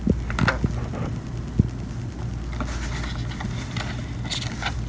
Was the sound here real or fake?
real